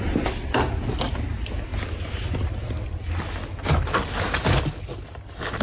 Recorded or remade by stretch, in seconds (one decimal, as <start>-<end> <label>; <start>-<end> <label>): 0.0-5.6 recorded